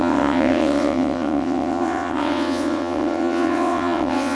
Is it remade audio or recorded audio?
remade